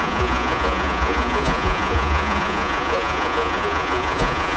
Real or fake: fake